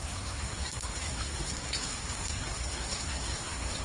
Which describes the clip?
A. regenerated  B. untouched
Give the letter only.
A